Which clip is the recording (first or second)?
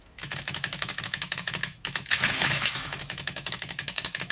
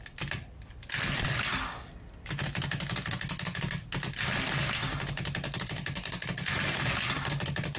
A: second